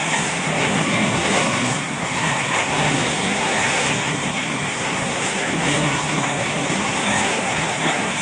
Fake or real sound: fake